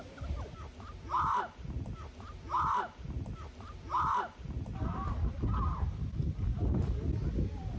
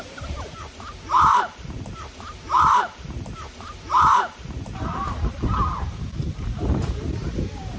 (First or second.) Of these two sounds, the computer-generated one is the second